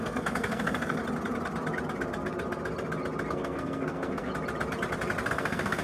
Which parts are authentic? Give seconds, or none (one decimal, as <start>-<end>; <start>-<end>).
1.0-3.3; 4.3-5.3